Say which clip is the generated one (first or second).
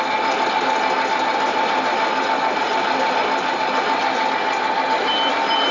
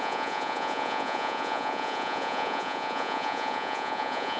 second